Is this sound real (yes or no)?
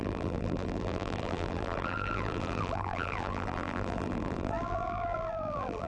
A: no